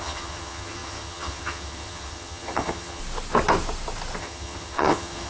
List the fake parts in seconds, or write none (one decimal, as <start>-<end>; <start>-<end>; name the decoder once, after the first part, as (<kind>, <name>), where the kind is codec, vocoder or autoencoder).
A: 0.0-3.0 (vocoder, HiFi-GAN); 4.2-5.3